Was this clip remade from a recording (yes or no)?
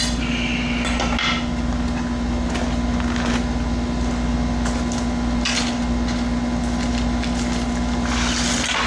no